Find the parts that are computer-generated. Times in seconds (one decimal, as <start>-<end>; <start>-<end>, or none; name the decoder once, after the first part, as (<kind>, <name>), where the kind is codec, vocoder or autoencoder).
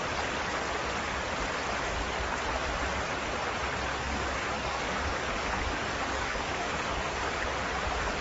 3.9-7.4 (codec, DAC)